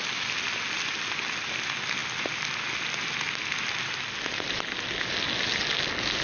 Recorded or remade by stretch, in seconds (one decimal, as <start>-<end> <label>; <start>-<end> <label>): 0.0-6.2 recorded